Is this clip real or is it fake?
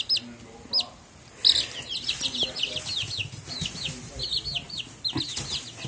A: real